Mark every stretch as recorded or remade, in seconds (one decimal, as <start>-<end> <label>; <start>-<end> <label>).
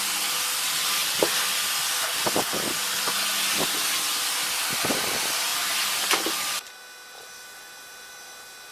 0.0-8.7 recorded